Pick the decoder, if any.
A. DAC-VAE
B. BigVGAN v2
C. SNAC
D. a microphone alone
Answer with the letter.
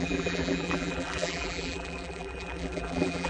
B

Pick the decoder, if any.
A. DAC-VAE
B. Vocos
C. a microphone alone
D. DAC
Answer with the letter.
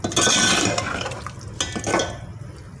C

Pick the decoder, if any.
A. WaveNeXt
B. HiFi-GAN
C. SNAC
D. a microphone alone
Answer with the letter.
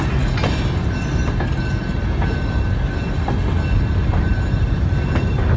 D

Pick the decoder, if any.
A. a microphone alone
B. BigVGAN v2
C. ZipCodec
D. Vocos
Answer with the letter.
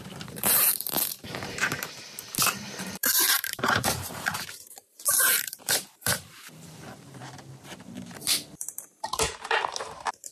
B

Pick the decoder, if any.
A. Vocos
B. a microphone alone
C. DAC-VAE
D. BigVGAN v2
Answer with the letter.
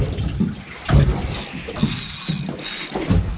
B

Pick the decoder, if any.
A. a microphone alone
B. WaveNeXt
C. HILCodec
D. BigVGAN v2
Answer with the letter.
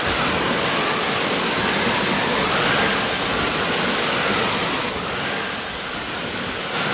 A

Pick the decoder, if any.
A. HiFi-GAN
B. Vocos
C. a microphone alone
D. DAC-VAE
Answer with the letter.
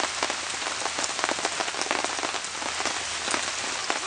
C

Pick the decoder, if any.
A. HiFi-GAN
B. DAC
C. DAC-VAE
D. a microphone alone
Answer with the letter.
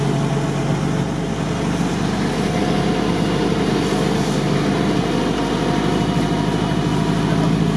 D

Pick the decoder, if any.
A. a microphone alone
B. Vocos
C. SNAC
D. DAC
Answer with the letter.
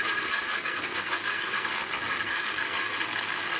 C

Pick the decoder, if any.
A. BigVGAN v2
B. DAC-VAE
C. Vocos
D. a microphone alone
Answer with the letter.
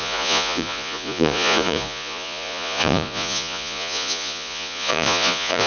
C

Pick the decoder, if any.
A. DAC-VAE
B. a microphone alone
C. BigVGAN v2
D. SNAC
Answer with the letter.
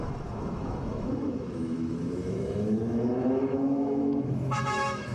A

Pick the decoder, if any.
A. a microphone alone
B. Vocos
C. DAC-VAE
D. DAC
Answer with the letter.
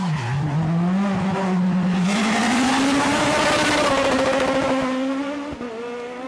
A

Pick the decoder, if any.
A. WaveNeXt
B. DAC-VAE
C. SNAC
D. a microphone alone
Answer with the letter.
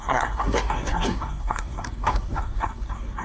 C